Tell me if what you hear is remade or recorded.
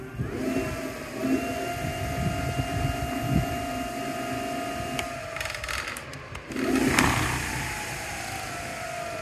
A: recorded